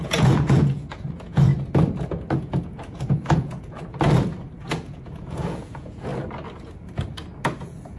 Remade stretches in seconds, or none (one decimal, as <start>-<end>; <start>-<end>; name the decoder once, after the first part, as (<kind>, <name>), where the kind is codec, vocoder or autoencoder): 0.0-1.5 (vocoder, Vocos); 2.4-3.8; 4.6-6.1; 7.6-8.0